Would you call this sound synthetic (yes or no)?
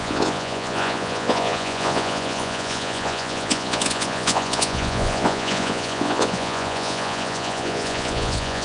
yes